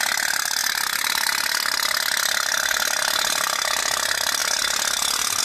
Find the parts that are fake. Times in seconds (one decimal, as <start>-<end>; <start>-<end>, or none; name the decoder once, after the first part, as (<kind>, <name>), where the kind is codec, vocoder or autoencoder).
none